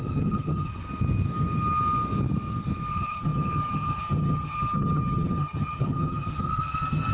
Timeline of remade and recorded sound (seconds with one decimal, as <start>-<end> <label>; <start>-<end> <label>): 0.0-0.7 remade; 0.7-2.9 recorded; 2.9-7.1 remade